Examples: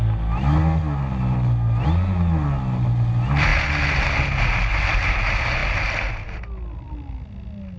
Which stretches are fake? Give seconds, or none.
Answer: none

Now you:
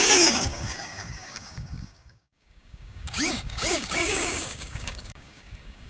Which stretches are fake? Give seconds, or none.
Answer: 0.0-5.9 (codec, DAC)

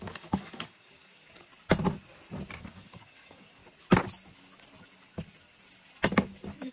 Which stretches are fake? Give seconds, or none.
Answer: 0.0-1.5 (codec, DAC); 2.6-3.6

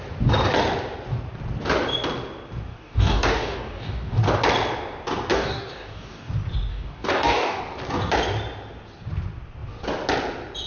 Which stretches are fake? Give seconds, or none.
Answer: 2.7-4.2 (codec, DAC); 5.3-6.3; 6.7-7.6